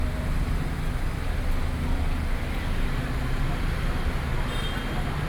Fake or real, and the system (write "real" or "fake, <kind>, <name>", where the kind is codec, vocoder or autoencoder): real